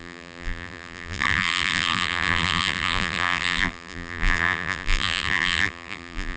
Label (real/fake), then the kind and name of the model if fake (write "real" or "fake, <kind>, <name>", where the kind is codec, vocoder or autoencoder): fake, vocoder, BigVGAN v2